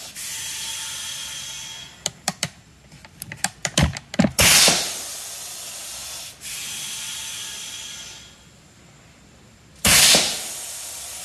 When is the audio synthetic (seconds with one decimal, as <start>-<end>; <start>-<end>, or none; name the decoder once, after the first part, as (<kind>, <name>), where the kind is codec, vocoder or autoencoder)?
none